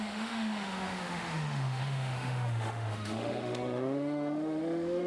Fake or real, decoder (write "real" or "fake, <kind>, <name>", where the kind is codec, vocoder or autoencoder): fake, autoencoder, DAC-VAE